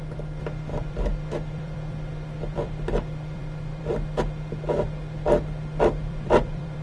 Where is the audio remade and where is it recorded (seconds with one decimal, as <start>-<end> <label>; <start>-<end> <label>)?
0.0-0.7 recorded; 0.7-3.8 remade; 3.8-6.1 recorded; 6.1-6.8 remade